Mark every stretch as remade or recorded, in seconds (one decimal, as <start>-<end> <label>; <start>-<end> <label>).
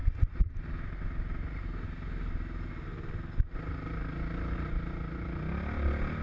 0.0-6.2 recorded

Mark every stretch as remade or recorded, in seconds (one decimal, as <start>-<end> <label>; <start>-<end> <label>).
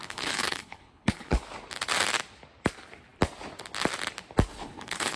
0.0-1.4 remade; 1.4-4.5 recorded; 4.5-5.2 remade